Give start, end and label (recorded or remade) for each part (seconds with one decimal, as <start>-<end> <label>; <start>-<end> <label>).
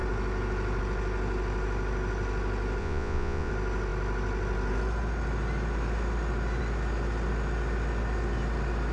0.0-2.8 recorded; 2.8-3.5 remade; 3.5-8.9 recorded